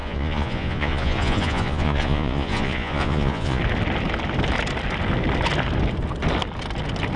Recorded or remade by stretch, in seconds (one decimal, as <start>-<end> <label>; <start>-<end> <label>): 0.0-3.6 remade; 3.6-7.2 recorded